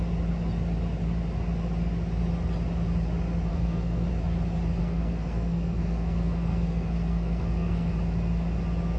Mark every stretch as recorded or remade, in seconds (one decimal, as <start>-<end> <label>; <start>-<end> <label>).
0.0-3.5 recorded; 3.5-4.1 remade; 4.1-4.8 recorded; 4.8-7.9 remade; 7.9-9.0 recorded